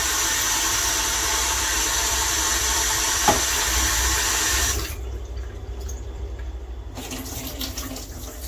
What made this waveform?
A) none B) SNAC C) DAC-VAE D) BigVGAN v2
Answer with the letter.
D